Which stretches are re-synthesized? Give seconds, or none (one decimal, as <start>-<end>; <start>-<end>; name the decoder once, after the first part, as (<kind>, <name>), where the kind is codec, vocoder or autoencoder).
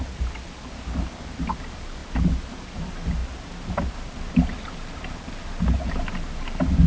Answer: none